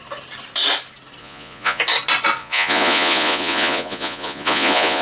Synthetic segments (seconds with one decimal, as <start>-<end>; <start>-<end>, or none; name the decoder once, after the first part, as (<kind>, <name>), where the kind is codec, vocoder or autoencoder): 1.2-1.8 (vocoder, Vocos); 2.4-5.0